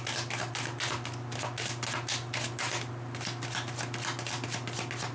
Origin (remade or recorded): recorded